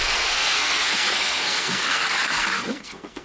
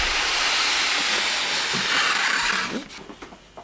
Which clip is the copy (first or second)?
first